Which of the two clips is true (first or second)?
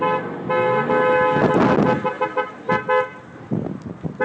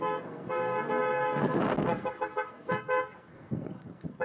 first